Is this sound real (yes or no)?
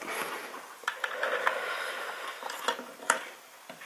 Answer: yes